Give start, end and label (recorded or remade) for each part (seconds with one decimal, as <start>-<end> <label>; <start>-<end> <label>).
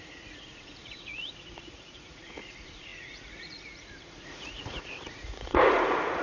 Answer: 0.0-6.2 remade